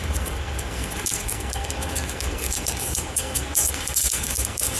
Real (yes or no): no